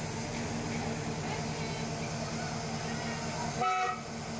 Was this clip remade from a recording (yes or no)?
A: no